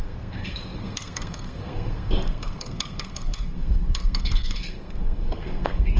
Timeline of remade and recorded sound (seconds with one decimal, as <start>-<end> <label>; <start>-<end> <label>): 0.0-6.0 remade